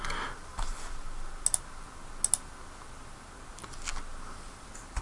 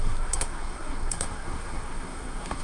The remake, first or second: second